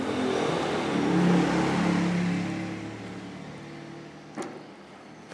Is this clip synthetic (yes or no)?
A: no